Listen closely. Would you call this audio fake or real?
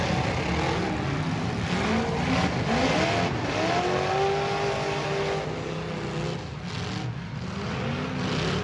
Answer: real